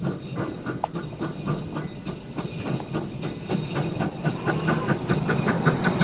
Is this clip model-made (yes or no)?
no